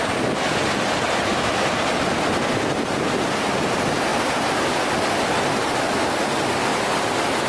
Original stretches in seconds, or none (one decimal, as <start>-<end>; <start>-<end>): 0.0-1.3; 2.0-6.7